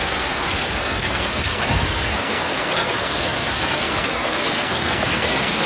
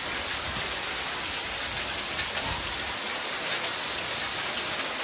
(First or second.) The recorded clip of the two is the second